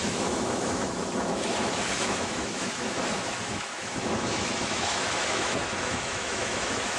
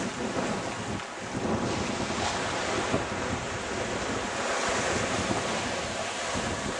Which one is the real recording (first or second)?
second